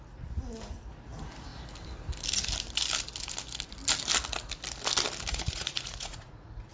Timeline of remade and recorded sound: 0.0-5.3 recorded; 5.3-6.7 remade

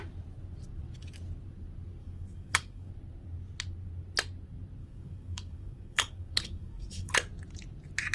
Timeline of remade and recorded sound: 0.0-2.0 recorded; 2.0-2.9 remade; 2.9-4.8 recorded; 4.8-7.1 remade; 7.1-8.1 recorded

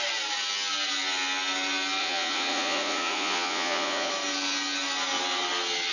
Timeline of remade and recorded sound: 0.0-2.0 recorded; 2.0-4.1 remade; 4.1-5.9 recorded